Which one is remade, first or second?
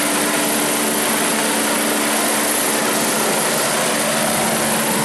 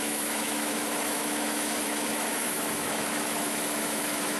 second